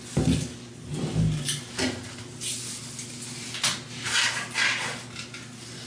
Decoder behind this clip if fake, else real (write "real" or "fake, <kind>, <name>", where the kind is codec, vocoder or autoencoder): real